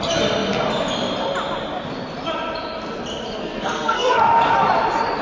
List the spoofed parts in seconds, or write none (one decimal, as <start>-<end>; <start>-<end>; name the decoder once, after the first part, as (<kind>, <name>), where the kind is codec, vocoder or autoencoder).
3.4-4.2 (codec, SNAC)